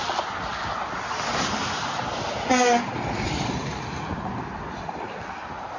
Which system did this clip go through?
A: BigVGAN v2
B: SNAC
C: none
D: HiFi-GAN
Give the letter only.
C